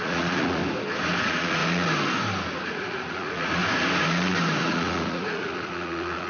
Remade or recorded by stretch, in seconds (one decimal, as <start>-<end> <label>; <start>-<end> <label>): 0.0-0.6 remade; 0.6-1.2 recorded; 1.2-1.6 remade; 1.6-2.7 recorded; 2.7-3.6 remade; 3.6-4.6 recorded; 4.6-6.3 remade